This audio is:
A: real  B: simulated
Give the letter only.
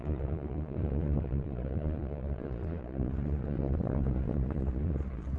B